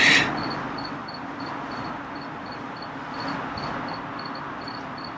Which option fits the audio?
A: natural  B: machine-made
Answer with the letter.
A